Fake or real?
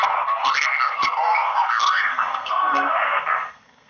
fake